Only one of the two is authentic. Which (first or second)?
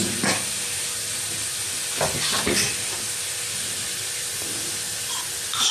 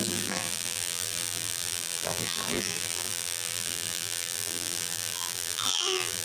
first